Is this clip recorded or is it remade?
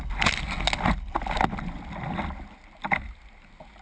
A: recorded